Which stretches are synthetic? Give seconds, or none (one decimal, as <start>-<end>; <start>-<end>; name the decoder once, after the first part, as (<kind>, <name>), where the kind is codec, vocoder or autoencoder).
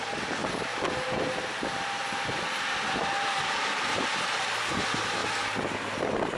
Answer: none